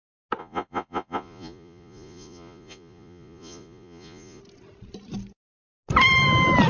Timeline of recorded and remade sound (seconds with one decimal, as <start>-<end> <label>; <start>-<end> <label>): 0.0-0.4 recorded; 0.4-4.4 remade; 4.4-6.7 recorded